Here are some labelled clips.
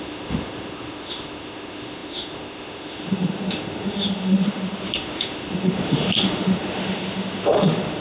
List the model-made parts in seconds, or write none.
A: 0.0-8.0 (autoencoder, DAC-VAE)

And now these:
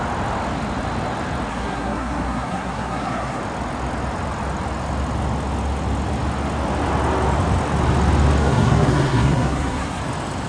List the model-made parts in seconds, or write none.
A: 1.5-3.4 (codec, SNAC); 8.4-10.0

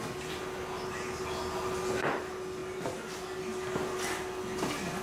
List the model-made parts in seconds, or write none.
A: none

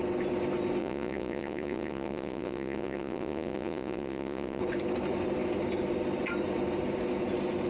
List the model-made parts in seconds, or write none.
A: 0.8-4.6 (vocoder, Vocos)